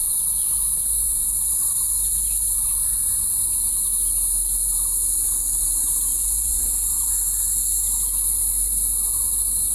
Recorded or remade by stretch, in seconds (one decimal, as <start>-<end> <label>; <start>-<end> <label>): 0.0-6.1 recorded; 6.1-7.1 remade; 7.1-9.7 recorded